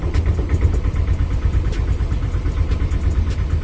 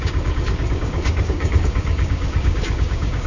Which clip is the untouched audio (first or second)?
first